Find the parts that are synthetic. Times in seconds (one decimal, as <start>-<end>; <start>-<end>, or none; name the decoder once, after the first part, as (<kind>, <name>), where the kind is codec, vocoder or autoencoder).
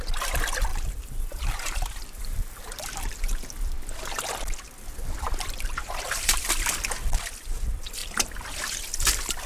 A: 0.7-2.6 (vocoder, BigVGAN v2); 5.8-6.4; 8.0-8.5